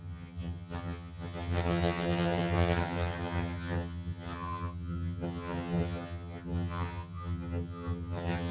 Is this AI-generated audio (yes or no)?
yes